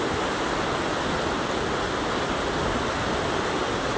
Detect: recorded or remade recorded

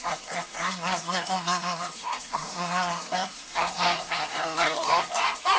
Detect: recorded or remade remade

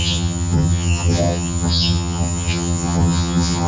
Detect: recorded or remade remade